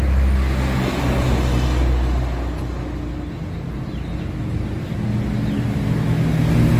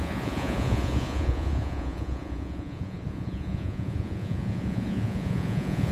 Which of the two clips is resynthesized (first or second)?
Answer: second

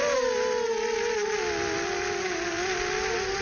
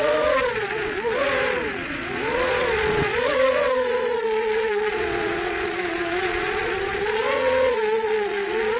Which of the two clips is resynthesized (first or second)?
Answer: second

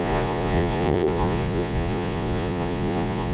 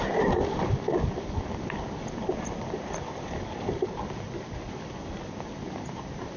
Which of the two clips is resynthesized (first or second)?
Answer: first